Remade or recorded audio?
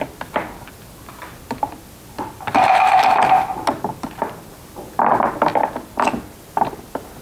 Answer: recorded